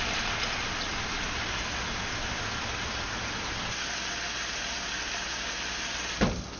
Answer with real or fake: real